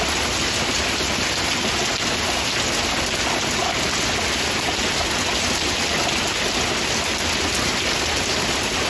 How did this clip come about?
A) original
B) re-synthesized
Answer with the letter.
A